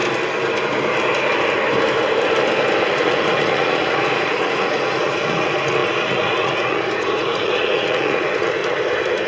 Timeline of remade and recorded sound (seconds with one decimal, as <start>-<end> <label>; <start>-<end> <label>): 0.0-2.9 recorded; 2.9-8.6 remade; 8.6-9.3 recorded